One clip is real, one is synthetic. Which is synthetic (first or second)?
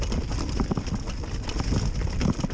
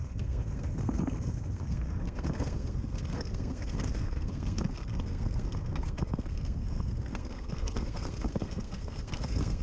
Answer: second